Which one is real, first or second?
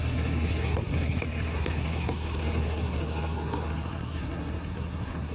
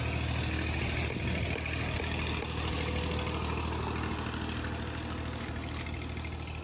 second